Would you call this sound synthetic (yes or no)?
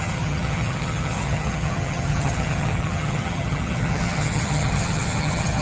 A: yes